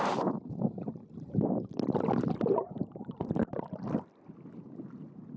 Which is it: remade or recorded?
recorded